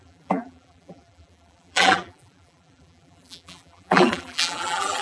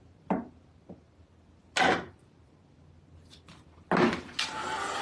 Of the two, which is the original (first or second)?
second